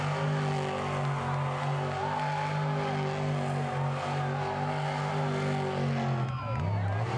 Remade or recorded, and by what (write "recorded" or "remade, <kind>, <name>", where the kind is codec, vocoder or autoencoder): recorded